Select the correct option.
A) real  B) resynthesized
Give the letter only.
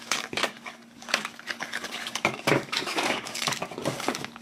B